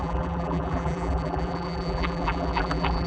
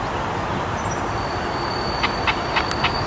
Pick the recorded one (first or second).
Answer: second